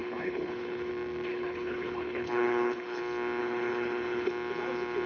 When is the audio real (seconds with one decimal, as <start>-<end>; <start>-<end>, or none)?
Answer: 0.9-1.3; 3.0-3.4; 4.3-5.1